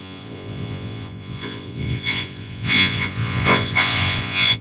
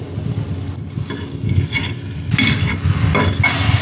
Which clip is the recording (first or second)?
second